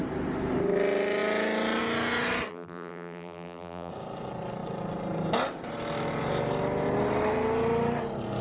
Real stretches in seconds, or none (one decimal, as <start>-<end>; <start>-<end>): 0.0-2.5; 3.9-8.4